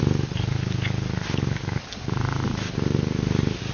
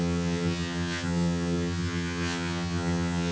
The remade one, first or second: second